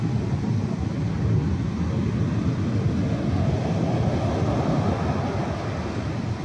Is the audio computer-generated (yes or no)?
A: no